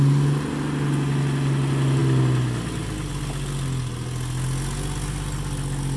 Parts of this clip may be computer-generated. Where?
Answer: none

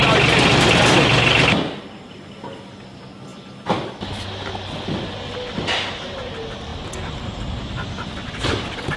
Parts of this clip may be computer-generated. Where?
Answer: none

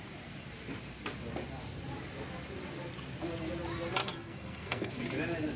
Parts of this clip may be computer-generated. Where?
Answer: 4.0-4.9 (codec, SNAC)